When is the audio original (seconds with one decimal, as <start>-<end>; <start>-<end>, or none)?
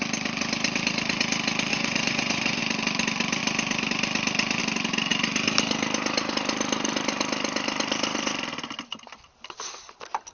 0.0-1.7; 2.6-10.3